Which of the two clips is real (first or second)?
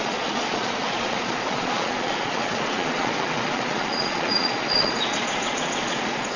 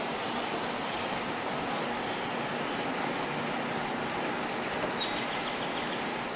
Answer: second